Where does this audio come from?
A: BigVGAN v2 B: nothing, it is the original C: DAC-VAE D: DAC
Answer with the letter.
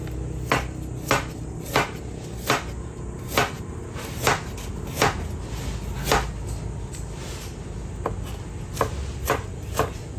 B